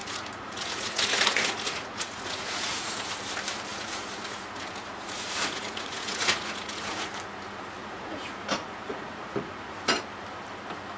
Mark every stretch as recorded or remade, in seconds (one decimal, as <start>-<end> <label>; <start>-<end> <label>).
0.0-3.1 remade; 3.1-3.7 recorded; 3.7-7.1 remade; 7.1-7.8 recorded; 7.8-10.0 remade; 10.0-11.0 recorded